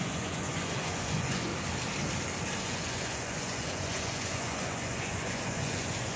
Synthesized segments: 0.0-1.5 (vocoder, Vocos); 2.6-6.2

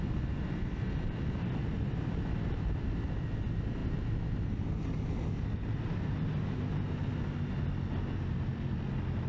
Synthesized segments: none